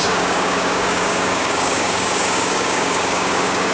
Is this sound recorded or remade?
remade